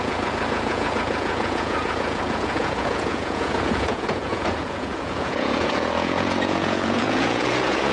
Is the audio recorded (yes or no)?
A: no